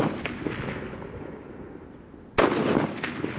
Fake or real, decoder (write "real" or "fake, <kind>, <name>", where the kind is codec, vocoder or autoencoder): real